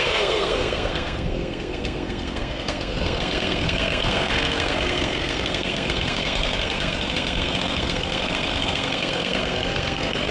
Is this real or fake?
fake